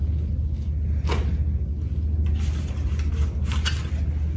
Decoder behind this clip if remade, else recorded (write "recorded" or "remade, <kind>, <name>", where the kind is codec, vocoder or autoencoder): recorded